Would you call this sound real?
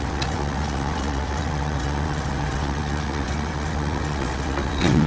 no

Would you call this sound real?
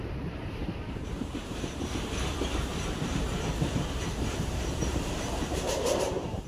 no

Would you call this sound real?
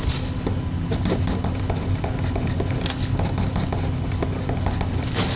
yes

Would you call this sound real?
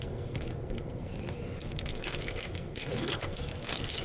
no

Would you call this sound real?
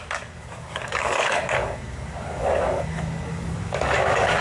no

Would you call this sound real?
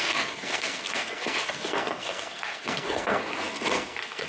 no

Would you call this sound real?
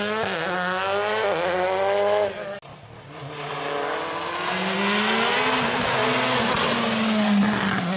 yes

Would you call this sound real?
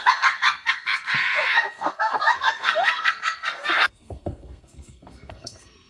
no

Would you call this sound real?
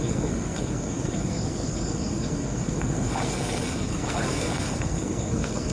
no